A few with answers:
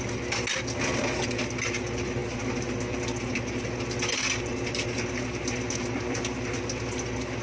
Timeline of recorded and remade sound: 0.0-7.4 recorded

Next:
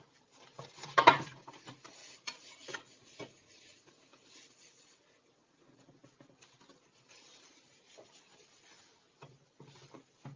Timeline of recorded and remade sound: 0.0-2.0 recorded; 2.0-5.8 remade; 5.8-10.4 recorded

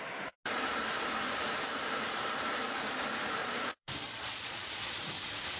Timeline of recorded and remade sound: 0.0-3.4 recorded; 3.4-5.1 remade; 5.1-5.6 recorded

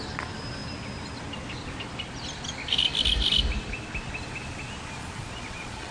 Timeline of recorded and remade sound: 0.0-5.0 recorded; 5.0-5.9 remade

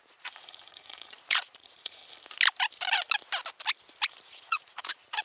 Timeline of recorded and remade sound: 0.0-2.0 remade; 2.0-4.1 recorded; 4.1-5.2 remade

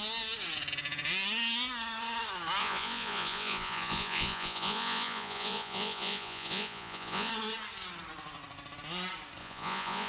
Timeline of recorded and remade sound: 0.0-2.6 recorded; 2.6-7.3 remade; 7.3-9.4 recorded; 9.4-10.1 remade